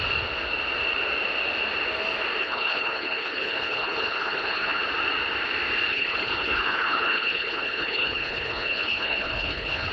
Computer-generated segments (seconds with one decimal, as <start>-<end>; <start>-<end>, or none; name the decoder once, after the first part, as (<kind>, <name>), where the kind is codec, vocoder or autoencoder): 2.4-4.8 (codec, HILCodec); 5.9-9.9